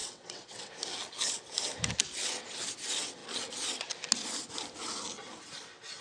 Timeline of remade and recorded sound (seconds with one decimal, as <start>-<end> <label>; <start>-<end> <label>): 0.0-0.7 remade; 0.7-6.0 recorded